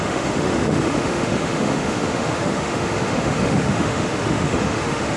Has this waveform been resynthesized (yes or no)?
yes